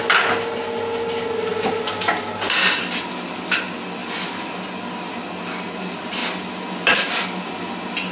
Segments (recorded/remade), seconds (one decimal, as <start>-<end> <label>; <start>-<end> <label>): 0.0-8.1 recorded